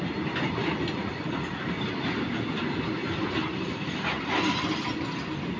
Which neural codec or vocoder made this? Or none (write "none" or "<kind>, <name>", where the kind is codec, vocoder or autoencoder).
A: none